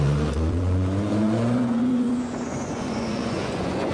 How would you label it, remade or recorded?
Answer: remade